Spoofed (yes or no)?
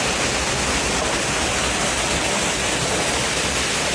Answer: no